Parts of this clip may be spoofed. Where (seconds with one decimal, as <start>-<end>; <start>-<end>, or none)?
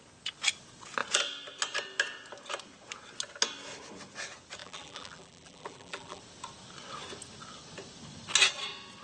4.6-6.2